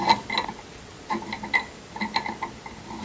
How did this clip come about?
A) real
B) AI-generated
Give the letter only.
A